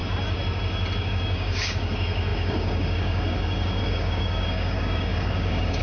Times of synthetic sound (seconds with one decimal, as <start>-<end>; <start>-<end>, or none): 1.0-5.8